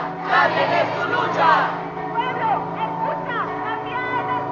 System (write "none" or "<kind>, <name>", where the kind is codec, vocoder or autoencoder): none